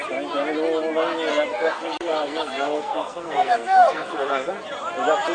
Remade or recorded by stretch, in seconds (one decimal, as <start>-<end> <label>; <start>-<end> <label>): 0.0-1.3 recorded; 1.3-4.5 remade; 4.5-5.3 recorded